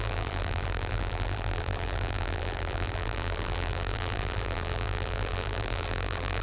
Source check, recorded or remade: remade